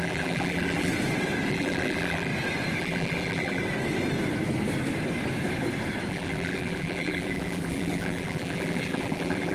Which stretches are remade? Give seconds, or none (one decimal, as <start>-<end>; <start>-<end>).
0.0-0.9; 1.5-2.3; 2.8-3.6; 6.1-9.5